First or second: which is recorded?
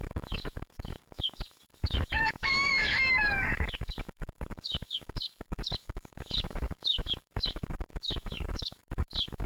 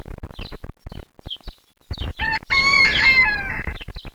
second